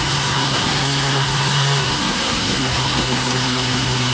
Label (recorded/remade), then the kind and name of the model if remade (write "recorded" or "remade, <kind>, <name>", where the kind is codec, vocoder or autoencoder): remade, codec, SNAC